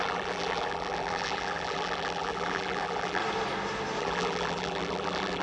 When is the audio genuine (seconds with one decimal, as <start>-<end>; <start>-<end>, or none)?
3.2-4.0